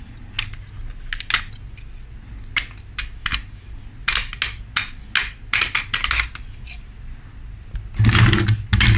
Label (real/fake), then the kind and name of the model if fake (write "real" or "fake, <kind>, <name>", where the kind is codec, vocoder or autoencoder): real